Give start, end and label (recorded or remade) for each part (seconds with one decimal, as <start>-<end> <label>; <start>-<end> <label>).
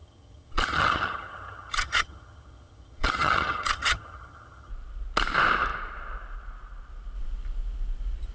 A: 0.0-4.7 remade; 4.7-8.3 recorded